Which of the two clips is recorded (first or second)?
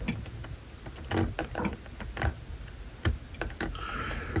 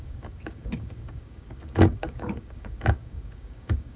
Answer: first